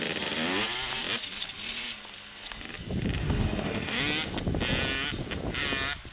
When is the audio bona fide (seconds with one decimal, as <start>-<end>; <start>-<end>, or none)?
0.0-3.2; 4.0-6.1

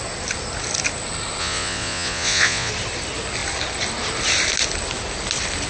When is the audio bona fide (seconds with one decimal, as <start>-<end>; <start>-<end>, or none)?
0.0-1.4; 2.7-5.7

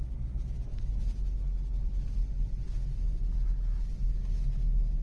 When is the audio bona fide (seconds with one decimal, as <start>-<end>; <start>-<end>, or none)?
0.0-5.0

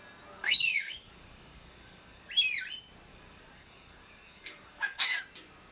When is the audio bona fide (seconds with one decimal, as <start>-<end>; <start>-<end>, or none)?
0.0-0.4; 2.3-3.1; 5.2-5.7

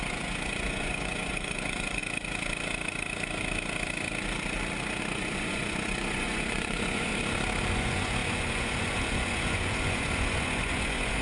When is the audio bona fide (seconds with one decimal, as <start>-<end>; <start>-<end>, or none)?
2.0-5.0; 7.1-7.7

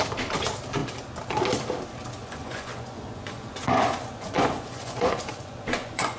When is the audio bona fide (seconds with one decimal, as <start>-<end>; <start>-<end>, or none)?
0.0-2.2